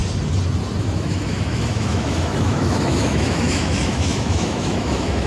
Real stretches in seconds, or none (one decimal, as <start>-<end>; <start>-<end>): 0.0-0.8